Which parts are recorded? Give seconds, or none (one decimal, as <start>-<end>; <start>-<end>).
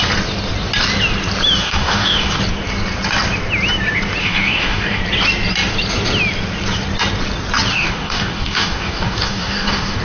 0.0-1.6; 2.4-4.2; 5.0-7.7